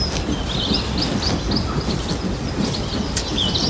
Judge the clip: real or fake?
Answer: real